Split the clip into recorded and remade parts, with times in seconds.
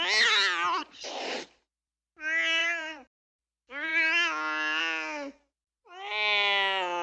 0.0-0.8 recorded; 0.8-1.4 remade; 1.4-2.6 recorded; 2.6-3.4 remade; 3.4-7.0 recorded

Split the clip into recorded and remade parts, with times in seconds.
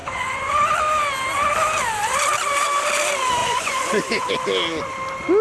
0.0-0.5 remade; 0.5-3.4 recorded; 3.4-4.3 remade; 4.3-5.4 recorded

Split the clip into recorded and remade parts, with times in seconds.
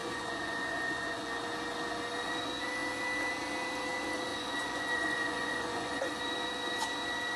0.0-1.4 remade; 1.4-4.3 recorded; 4.3-6.2 remade; 6.2-7.4 recorded